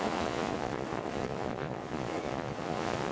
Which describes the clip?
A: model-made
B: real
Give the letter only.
A